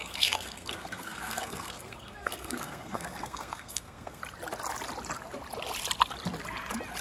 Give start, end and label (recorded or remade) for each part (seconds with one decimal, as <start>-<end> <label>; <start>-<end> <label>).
0.0-4.2 remade; 4.2-7.0 recorded